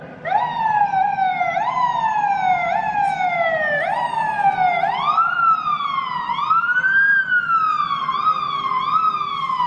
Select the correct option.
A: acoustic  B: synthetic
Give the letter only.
A